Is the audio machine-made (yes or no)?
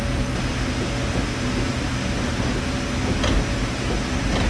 no